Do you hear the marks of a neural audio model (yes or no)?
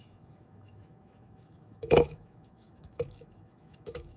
yes